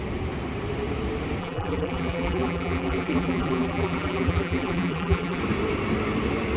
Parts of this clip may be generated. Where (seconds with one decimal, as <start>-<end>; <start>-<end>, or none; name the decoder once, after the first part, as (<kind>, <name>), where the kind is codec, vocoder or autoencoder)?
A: 1.4-5.4 (vocoder, BigVGAN v2)